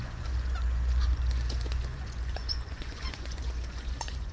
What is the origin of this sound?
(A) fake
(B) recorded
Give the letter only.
A